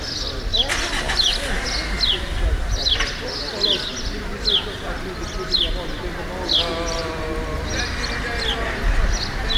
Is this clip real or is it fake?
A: real